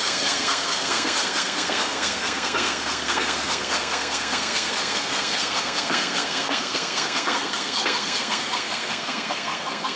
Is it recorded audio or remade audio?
remade